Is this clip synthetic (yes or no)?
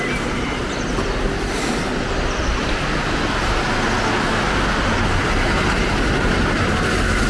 no